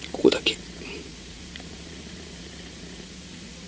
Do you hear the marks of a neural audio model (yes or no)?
yes